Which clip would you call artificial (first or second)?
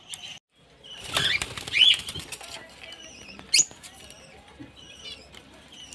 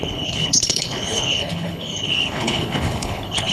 second